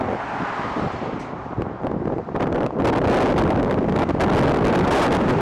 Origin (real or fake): real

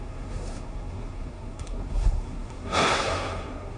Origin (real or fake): fake